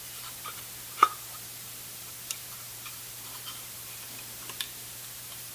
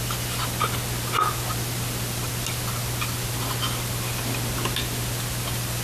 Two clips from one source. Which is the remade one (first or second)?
first